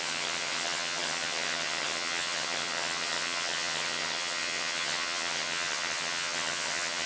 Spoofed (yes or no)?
yes